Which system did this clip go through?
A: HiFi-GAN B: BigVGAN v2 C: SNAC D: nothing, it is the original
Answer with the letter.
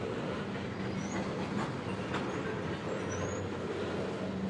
D